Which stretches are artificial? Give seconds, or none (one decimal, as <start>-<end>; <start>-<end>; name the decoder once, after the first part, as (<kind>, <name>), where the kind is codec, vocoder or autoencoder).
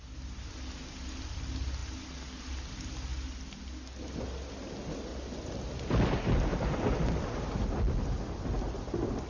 none